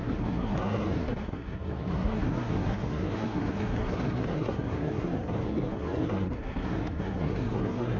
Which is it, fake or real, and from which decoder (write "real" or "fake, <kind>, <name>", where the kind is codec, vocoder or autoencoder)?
fake, codec, SNAC